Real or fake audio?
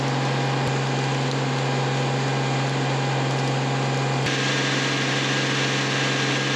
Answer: real